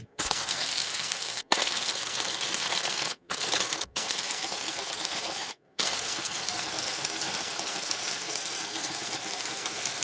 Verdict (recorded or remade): remade